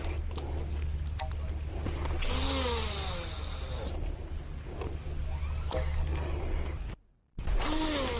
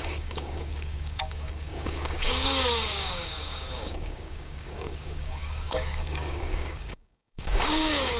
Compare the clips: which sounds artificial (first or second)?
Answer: second